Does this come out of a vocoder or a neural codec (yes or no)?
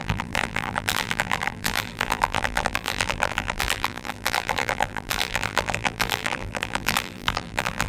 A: yes